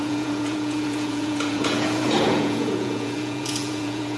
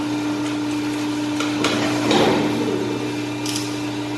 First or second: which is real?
second